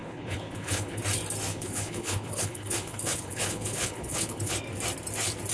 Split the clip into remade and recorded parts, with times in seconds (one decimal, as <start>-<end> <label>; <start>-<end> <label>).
0.0-1.0 remade; 1.0-1.5 recorded; 1.5-4.5 remade; 4.5-5.5 recorded